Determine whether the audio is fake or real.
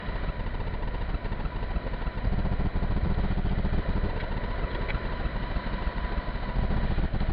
real